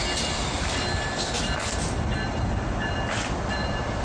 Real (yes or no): yes